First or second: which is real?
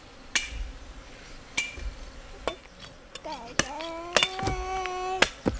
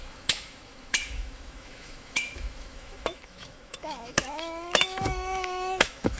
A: first